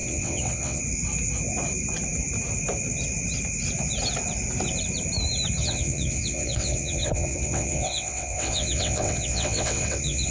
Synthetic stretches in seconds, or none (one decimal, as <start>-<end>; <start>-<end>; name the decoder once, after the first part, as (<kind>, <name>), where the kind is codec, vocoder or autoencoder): 0.0-0.8 (vocoder, WaveNeXt); 5.6-10.3